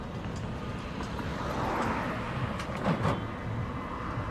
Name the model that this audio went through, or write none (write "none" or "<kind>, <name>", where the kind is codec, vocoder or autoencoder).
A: none